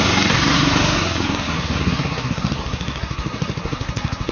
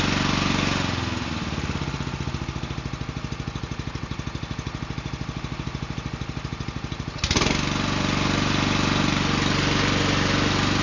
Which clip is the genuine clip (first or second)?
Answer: second